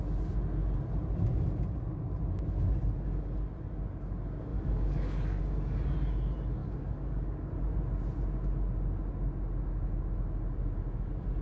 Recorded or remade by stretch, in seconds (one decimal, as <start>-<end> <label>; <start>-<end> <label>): 0.0-4.5 recorded; 4.5-5.4 remade; 5.4-6.6 recorded; 6.6-7.5 remade; 7.5-11.4 recorded